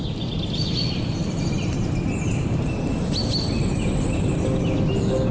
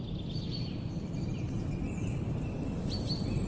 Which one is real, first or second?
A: second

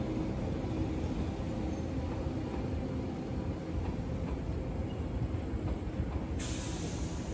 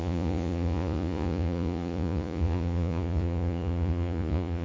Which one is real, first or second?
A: first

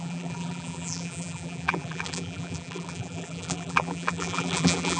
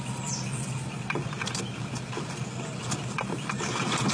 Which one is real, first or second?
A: second